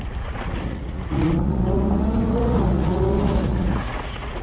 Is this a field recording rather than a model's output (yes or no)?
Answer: no